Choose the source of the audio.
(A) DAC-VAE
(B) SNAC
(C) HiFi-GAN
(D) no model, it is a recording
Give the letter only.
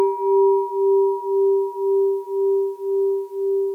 D